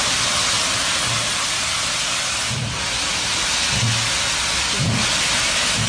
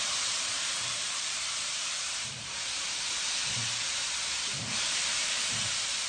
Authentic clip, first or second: first